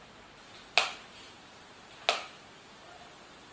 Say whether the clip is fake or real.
real